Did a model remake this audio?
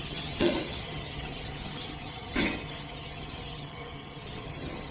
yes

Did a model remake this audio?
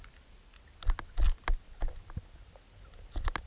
no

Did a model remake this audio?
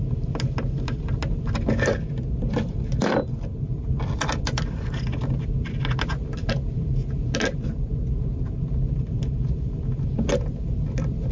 no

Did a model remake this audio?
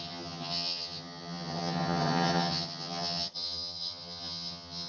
yes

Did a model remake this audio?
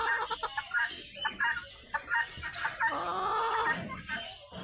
no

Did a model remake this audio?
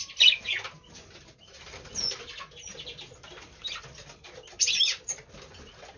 no